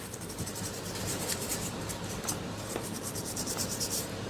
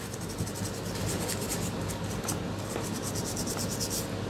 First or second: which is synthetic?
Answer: first